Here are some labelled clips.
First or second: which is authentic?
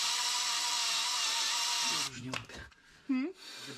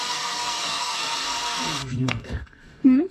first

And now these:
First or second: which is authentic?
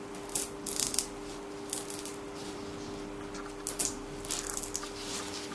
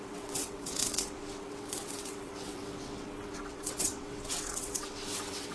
first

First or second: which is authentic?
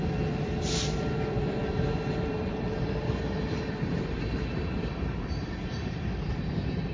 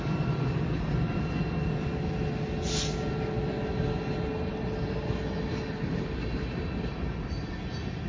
second